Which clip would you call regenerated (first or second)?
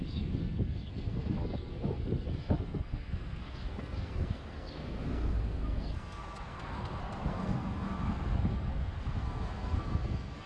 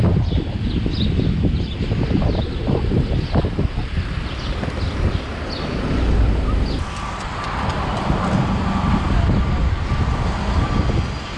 first